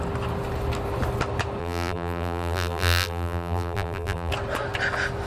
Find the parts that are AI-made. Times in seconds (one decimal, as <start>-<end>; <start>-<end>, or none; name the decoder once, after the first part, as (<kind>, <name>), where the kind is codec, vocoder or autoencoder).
1.6-4.3 (vocoder, BigVGAN v2)